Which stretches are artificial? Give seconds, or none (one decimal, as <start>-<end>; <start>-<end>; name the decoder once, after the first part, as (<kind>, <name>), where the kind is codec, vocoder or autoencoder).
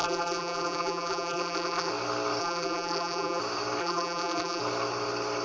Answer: 0.0-1.9 (vocoder, BigVGAN v2); 2.4-3.4; 3.8-4.6